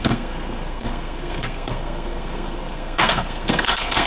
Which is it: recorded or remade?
remade